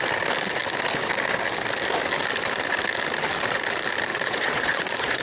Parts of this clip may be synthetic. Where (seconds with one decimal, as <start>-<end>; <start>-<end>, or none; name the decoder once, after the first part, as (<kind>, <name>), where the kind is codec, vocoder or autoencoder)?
4.1-5.2 (vocoder, Vocos)